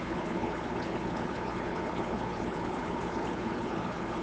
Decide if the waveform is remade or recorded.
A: remade